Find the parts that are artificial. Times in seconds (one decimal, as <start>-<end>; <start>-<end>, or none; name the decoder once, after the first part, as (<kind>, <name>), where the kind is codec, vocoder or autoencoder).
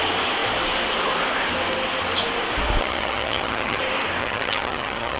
2.8-3.8 (vocoder, HiFi-GAN); 4.2-5.2